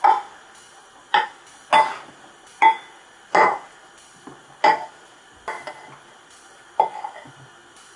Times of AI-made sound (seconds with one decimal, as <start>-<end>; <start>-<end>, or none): none

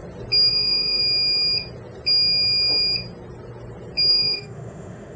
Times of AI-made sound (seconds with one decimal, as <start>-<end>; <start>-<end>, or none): 0.5-1.0; 4.1-5.2

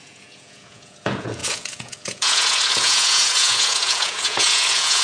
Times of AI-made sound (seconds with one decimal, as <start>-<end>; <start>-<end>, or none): 0.0-5.0